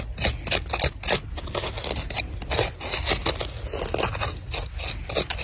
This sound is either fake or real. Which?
real